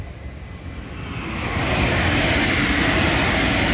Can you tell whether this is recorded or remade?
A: recorded